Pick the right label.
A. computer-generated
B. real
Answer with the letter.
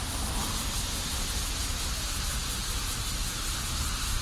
B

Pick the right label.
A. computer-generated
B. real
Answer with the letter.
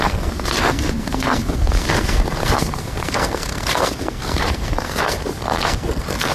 A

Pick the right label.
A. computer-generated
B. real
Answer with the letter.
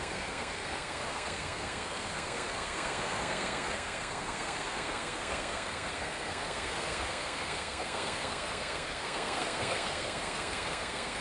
A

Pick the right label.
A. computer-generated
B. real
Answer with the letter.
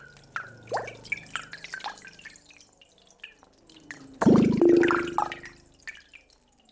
B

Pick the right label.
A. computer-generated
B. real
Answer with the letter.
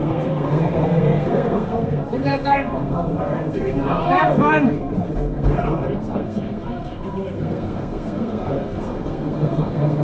A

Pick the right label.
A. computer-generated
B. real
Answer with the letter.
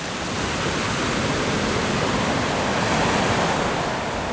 B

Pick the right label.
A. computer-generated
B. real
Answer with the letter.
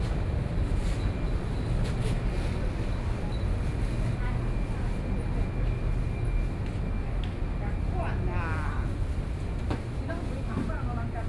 B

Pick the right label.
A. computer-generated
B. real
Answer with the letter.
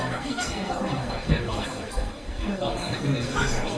A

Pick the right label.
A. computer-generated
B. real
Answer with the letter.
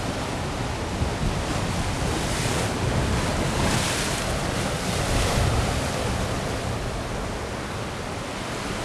B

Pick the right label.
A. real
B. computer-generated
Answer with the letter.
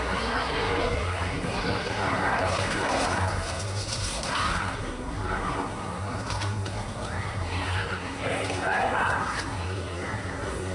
B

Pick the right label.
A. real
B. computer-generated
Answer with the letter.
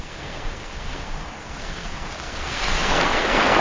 B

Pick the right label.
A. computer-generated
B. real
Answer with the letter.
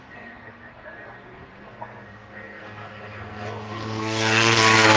A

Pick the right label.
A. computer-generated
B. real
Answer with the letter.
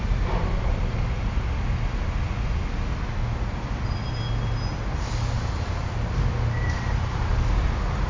B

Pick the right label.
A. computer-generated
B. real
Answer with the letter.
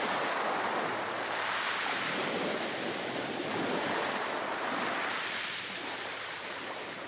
B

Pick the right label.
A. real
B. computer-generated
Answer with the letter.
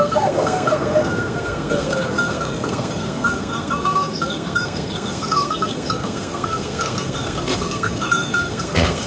B